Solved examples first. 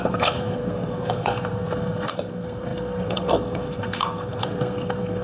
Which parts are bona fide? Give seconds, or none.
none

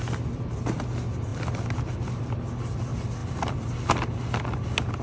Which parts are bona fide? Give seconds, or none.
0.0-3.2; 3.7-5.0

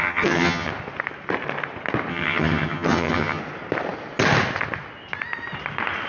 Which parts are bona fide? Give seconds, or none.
0.7-2.1; 3.4-6.1

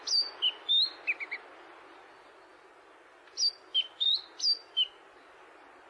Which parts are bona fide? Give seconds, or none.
0.0-5.9

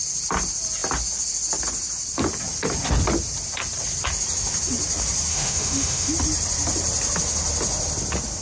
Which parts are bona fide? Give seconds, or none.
0.0-5.3; 6.1-8.4

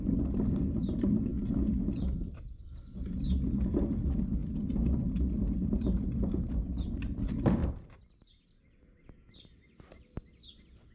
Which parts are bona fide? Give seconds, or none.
0.0-10.9

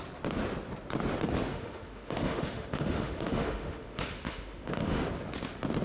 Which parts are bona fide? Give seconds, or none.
0.0-1.5; 5.0-5.8